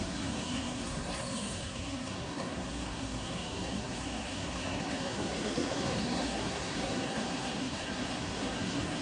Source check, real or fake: fake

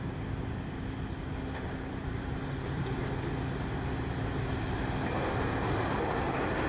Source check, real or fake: real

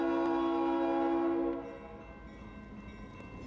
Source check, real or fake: real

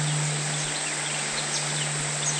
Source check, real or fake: real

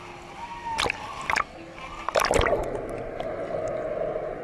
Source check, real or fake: real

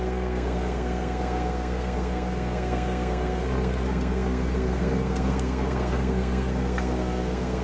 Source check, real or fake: fake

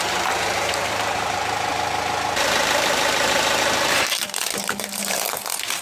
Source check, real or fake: fake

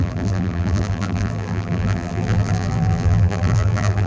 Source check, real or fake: fake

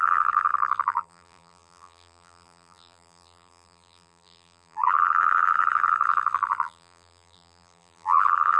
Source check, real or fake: fake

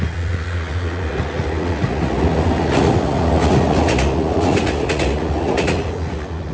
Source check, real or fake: fake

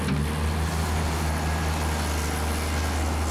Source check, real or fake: real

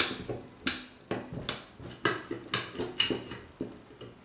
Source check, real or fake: real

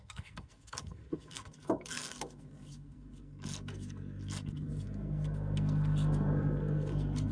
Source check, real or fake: fake